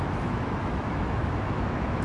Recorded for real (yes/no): no